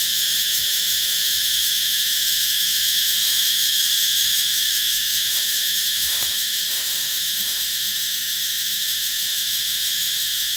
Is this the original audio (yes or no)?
no